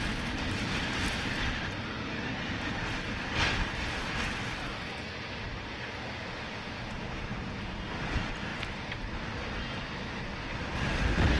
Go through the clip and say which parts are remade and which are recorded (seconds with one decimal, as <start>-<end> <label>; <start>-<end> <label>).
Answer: 0.0-11.4 recorded